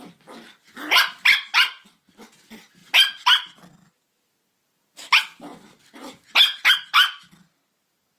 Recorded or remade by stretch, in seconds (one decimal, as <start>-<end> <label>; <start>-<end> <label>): 0.0-8.2 recorded